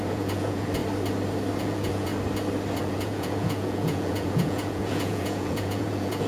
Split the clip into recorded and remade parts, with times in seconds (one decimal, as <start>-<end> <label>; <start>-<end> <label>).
0.0-0.8 remade; 0.8-1.6 recorded; 1.6-2.1 remade; 2.1-2.8 recorded; 2.8-6.3 remade